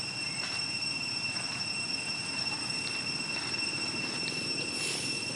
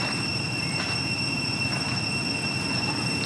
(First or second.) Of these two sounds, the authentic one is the second